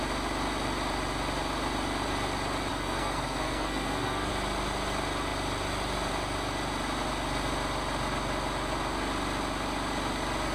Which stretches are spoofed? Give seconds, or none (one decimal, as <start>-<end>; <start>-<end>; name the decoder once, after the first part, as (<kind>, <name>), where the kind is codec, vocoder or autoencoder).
2.7-4.3 (codec, SNAC)